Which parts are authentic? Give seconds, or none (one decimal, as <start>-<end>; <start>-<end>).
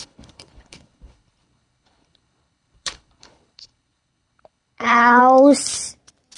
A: 5.2-6.4